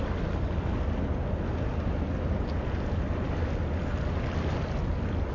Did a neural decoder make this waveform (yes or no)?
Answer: no